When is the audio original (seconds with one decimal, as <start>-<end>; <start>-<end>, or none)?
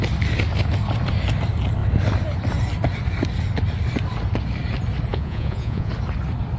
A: 0.0-5.1; 5.9-6.6